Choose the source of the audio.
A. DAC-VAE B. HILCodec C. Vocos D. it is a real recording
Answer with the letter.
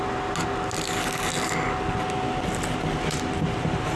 D